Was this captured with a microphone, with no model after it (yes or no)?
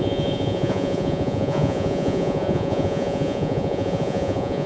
no